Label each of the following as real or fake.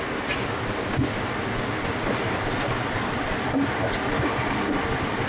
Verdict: real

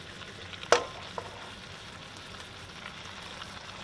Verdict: real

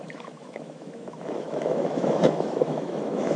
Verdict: fake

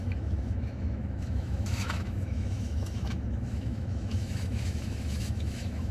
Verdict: fake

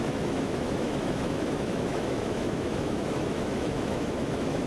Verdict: fake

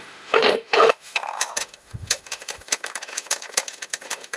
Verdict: fake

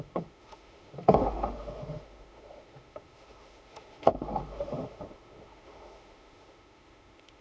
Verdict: fake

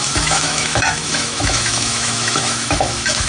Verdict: fake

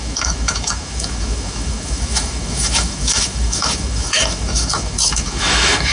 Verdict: fake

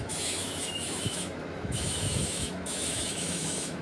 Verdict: fake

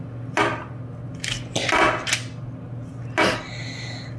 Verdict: real